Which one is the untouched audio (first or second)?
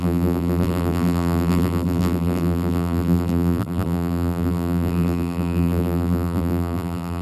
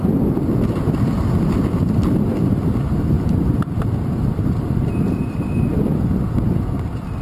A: second